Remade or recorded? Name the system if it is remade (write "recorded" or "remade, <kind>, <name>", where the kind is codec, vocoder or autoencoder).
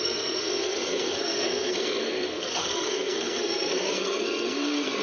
remade, codec, SNAC